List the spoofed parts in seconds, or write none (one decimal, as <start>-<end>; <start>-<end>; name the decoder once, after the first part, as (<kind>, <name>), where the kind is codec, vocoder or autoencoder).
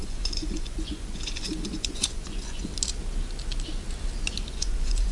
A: 0.0-2.7 (vocoder, Vocos); 4.5-5.1